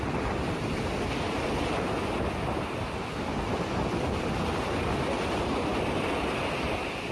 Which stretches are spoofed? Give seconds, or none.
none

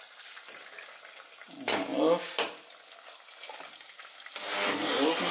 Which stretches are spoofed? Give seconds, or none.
none

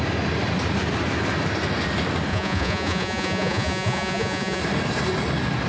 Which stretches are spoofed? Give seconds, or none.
2.3-4.6 (vocoder, Vocos)

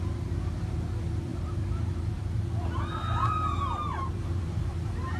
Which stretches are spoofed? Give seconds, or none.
0.0-5.2 (vocoder, BigVGAN v2)